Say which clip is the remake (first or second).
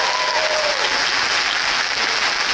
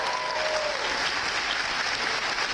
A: first